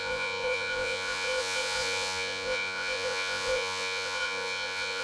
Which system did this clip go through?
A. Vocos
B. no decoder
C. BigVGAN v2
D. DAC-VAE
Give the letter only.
A